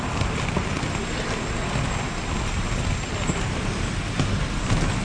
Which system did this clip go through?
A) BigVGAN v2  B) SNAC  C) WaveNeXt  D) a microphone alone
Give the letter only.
D